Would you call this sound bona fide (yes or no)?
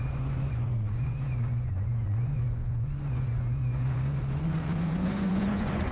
no